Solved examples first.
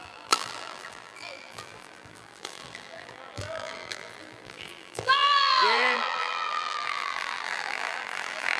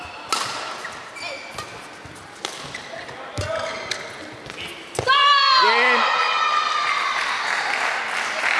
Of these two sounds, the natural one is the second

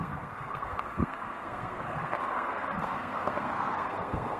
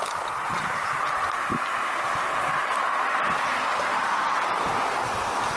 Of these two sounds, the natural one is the second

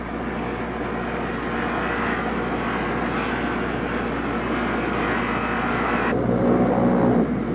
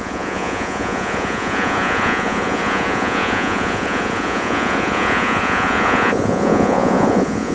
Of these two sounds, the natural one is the first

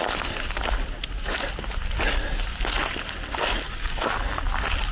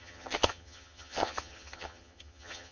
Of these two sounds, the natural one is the first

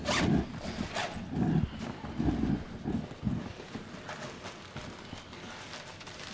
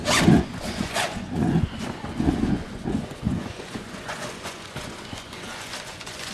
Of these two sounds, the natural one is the first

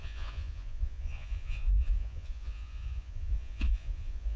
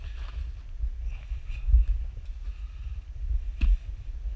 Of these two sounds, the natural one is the second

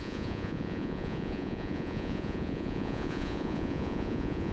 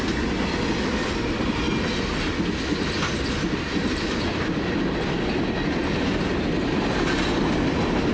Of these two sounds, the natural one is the second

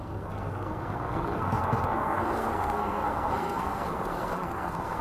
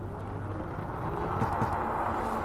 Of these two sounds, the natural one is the second